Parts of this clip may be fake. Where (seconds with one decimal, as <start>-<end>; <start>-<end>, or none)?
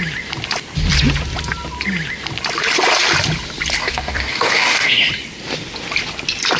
3.8-5.1